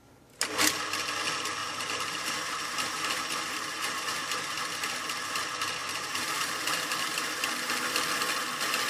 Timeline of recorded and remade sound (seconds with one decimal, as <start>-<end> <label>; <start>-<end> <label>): 0.0-1.6 recorded; 1.6-4.3 remade; 4.3-5.8 recorded; 5.8-6.9 remade; 6.9-8.9 recorded